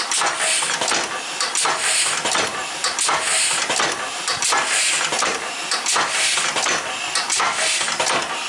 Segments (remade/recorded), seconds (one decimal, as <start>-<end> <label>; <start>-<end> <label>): 0.0-8.5 recorded